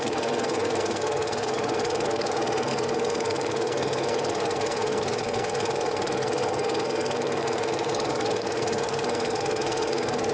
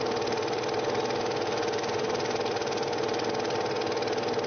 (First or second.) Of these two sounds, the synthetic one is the first